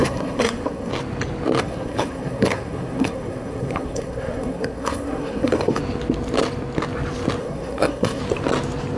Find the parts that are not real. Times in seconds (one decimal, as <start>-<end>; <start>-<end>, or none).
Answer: 0.0-0.9; 1.6-5.8; 7.4-8.2